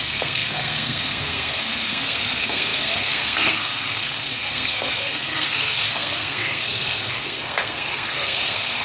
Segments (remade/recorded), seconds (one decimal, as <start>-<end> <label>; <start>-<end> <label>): 0.0-8.8 remade